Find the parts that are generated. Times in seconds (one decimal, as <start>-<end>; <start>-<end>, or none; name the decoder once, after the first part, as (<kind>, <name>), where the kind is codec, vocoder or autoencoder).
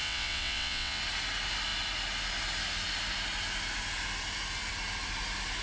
0.0-1.0 (vocoder, WaveNeXt)